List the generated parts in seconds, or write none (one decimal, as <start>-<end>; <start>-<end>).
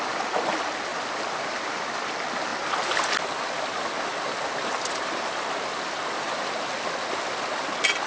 none